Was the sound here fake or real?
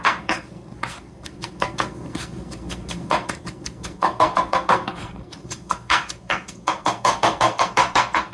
fake